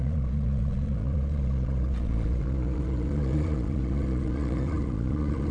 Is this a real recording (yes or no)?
no